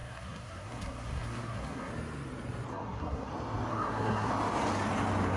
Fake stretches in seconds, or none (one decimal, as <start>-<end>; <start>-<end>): 0.0-1.9; 2.7-3.3; 3.7-4.3